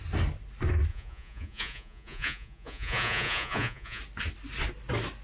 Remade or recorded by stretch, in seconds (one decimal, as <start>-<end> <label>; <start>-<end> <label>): 0.0-0.9 recorded; 0.9-4.0 remade; 4.0-5.2 recorded